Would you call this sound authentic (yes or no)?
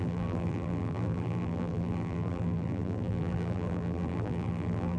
no